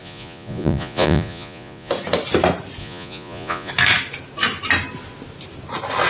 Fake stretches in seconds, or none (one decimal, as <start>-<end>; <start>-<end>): 0.0-1.9; 2.8-3.7